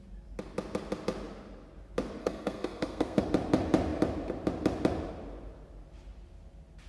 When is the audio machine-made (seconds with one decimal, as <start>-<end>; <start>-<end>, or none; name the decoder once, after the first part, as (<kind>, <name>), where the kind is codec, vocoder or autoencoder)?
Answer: 2.2-3.2 (codec, SNAC)

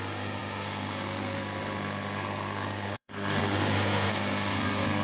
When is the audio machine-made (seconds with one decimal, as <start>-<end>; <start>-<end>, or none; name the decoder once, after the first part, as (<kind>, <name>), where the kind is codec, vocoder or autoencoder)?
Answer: 0.0-5.0 (codec, SNAC)

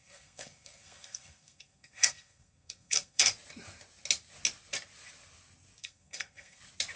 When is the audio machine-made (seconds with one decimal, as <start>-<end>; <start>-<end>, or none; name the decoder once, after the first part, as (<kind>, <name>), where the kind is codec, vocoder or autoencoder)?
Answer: 0.0-3.3 (codec, SNAC); 5.8-6.6

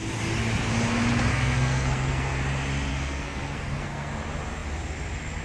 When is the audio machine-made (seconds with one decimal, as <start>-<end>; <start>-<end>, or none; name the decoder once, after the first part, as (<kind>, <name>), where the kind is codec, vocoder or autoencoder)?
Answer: 1.3-2.4 (codec, SNAC); 2.9-4.1

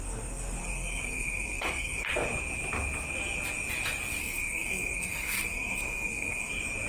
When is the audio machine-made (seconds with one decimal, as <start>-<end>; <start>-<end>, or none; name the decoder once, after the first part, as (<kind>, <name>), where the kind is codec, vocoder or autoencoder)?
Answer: 0.6-2.1 (codec, SNAC); 4.2-6.5

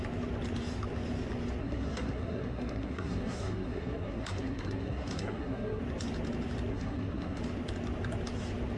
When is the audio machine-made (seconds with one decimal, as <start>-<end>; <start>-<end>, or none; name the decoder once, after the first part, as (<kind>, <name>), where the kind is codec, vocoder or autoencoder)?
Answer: 1.6-5.8 (codec, SNAC); 6.7-7.4

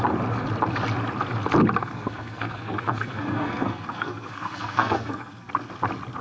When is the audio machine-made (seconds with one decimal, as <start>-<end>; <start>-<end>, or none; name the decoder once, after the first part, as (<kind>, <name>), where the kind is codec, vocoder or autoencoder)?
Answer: 1.8-5.5 (codec, SNAC)